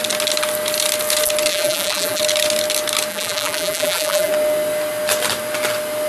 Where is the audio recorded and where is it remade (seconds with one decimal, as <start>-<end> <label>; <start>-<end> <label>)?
0.0-1.5 recorded; 1.5-2.2 remade; 2.2-3.1 recorded; 3.1-4.3 remade; 4.3-6.1 recorded